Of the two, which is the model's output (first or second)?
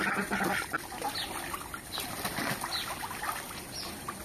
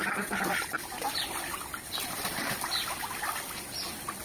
second